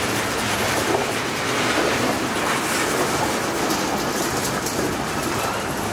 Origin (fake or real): real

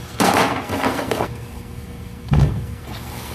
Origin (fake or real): fake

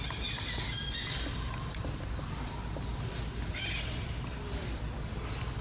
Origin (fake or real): real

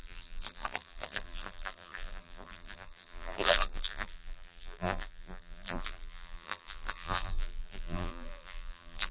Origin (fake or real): fake